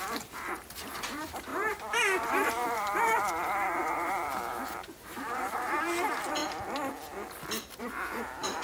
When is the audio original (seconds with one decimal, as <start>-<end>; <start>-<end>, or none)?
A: 6.4-7.8